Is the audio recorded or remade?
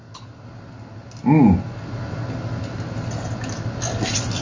recorded